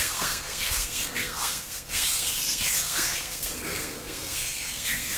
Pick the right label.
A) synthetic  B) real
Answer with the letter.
A